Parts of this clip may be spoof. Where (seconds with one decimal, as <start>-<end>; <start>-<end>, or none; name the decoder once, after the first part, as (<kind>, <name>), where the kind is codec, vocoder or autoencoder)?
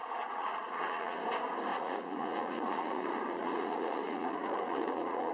0.0-1.2 (vocoder, Vocos); 1.7-5.3